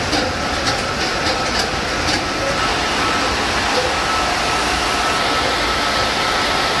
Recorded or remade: recorded